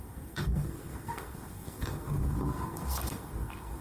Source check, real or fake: fake